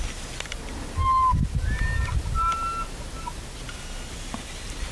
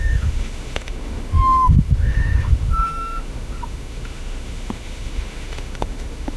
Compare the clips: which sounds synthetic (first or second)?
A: second